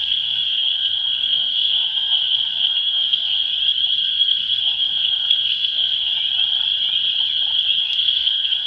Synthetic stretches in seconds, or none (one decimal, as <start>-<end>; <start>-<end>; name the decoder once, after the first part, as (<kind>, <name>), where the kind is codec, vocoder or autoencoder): 0.0-3.5 (codec, SNAC); 4.1-6.1; 7.8-8.7